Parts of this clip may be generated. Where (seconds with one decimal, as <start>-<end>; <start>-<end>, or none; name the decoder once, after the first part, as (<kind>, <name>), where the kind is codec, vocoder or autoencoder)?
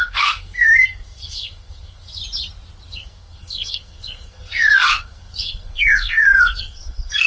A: 0.0-2.2 (codec, SNAC); 2.9-7.3